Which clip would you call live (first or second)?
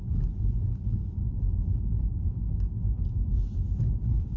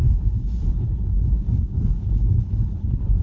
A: first